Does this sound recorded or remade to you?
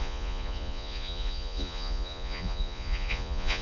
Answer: remade